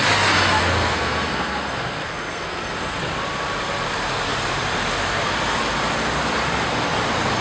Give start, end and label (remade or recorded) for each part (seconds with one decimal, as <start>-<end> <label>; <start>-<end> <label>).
0.0-0.6 recorded; 0.6-3.0 remade; 3.0-7.4 recorded